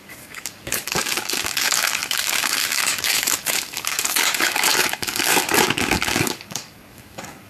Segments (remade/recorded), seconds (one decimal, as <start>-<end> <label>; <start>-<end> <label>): 0.0-7.5 remade